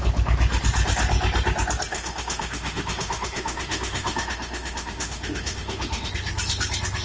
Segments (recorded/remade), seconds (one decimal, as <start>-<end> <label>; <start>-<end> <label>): 0.0-1.9 recorded; 1.9-6.1 remade; 6.1-7.0 recorded